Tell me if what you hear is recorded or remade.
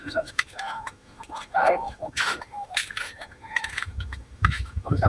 remade